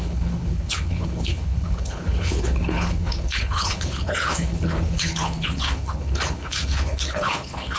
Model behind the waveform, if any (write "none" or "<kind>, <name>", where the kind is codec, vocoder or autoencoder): codec, HILCodec